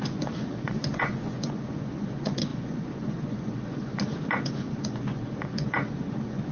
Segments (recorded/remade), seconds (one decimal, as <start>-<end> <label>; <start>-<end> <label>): 0.0-6.5 remade